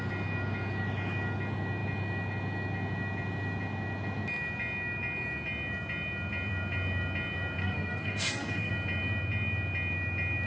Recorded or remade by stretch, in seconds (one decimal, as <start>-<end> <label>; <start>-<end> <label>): 0.0-7.6 recorded; 7.6-8.7 remade; 8.7-10.5 recorded